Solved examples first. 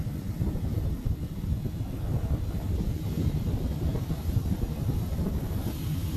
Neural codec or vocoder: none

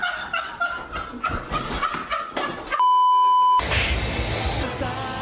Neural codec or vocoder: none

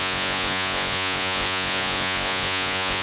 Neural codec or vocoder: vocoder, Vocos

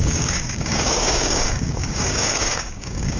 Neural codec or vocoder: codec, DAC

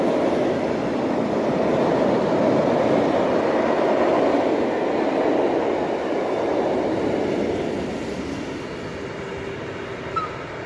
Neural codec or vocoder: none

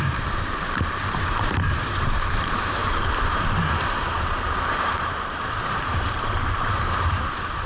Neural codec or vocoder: vocoder, BigVGAN v2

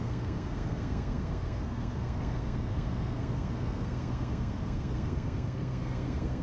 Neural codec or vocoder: codec, SNAC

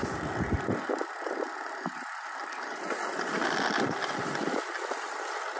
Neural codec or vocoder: none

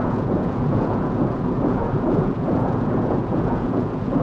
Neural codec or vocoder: vocoder, Vocos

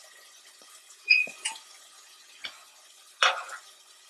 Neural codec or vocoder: vocoder, Vocos